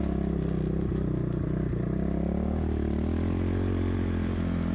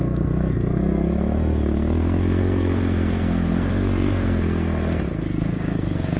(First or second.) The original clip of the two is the first